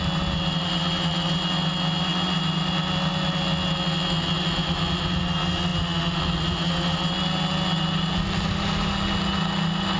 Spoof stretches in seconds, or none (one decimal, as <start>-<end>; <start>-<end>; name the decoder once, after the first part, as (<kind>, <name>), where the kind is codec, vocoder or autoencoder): none